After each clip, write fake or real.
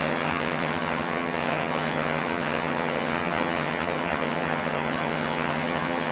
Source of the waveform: fake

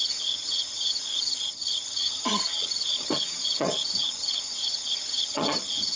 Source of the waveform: fake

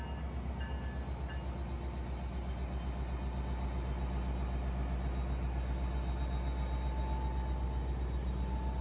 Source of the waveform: real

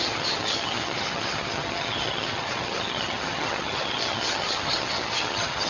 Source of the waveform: fake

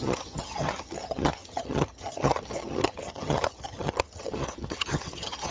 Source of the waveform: fake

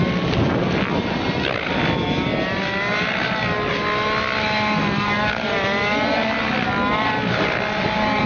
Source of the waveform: real